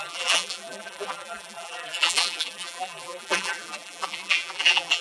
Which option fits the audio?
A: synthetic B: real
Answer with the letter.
A